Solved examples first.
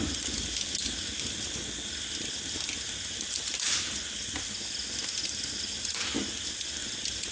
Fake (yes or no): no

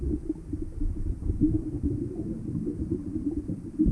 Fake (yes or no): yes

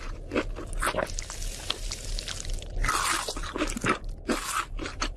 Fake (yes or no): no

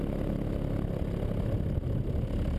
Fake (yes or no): no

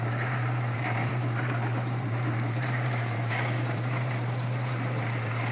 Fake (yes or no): yes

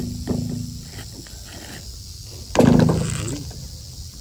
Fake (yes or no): no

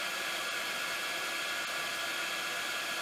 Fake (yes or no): no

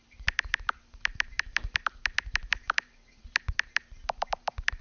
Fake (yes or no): yes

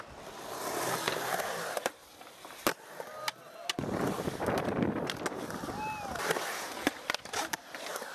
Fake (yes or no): no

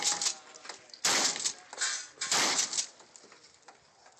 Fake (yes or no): no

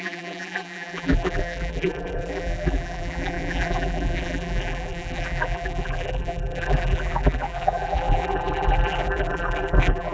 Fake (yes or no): yes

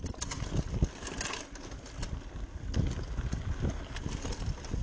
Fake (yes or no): no